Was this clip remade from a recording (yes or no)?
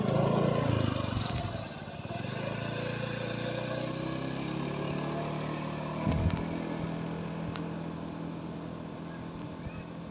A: no